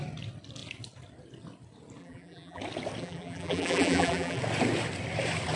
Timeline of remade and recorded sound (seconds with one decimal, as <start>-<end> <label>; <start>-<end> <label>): 0.0-2.0 recorded; 2.0-2.6 remade; 2.6-3.0 recorded; 3.0-4.4 remade; 4.4-5.6 recorded